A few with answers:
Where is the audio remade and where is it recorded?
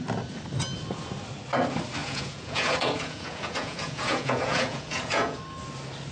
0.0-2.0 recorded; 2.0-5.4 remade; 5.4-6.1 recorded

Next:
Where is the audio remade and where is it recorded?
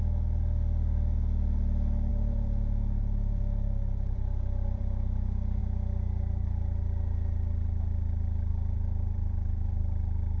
0.0-2.1 recorded; 2.1-5.6 remade; 5.6-8.5 recorded; 8.5-9.8 remade; 9.8-10.4 recorded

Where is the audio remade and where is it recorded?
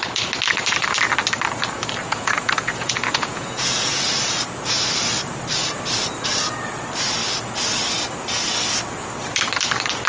0.0-2.0 recorded; 2.0-4.1 remade; 4.1-10.1 recorded